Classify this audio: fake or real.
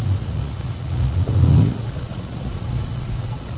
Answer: fake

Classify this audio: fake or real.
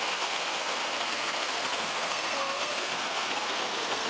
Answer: fake